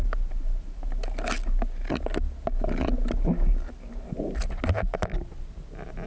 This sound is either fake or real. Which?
real